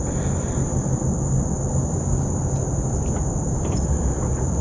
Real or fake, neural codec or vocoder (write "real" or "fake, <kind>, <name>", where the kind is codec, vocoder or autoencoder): real